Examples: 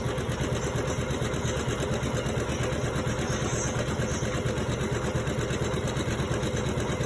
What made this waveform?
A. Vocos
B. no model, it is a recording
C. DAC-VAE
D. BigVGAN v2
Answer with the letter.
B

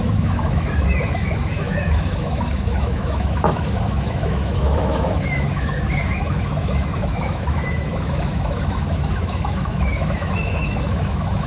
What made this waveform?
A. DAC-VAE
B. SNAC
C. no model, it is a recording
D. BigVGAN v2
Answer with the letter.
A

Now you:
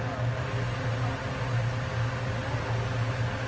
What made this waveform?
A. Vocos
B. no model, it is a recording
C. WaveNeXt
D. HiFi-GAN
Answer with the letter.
B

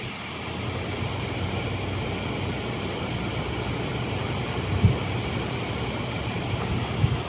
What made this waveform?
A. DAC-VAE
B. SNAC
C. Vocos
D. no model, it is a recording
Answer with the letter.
D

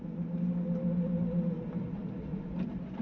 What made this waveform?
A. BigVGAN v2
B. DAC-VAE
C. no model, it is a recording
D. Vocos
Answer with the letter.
C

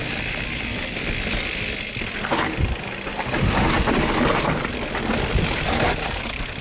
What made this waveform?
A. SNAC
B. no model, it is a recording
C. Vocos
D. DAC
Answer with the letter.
B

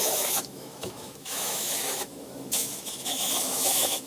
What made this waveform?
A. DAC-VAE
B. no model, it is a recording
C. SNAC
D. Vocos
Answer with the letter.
A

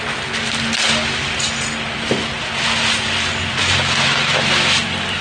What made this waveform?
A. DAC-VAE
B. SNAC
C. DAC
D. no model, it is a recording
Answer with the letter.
D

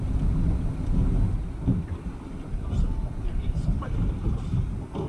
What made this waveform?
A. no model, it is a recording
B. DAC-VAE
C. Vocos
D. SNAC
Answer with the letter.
A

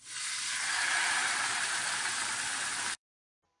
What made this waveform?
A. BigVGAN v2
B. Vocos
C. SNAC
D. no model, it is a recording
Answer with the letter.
A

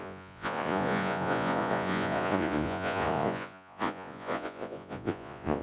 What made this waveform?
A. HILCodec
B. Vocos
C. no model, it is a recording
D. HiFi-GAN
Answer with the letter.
B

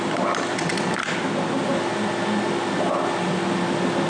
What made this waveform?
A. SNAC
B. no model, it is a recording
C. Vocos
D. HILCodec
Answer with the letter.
B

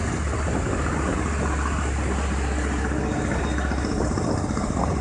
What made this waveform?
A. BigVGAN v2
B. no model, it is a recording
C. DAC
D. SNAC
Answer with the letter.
B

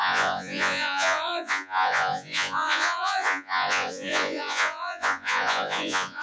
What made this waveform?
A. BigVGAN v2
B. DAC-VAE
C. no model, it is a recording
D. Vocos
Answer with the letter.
D